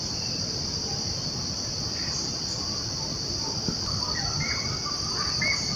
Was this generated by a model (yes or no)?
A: no